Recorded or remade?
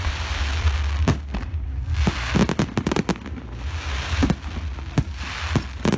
recorded